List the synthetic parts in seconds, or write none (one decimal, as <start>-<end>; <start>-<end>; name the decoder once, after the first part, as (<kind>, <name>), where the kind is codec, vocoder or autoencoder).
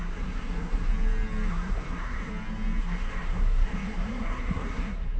0.0-0.9 (codec, SNAC); 1.5-2.3; 2.8-5.2